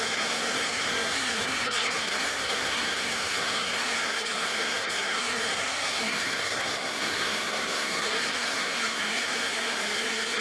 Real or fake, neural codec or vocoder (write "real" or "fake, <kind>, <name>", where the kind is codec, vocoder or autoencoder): fake, codec, SNAC